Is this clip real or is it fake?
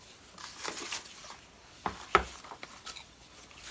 real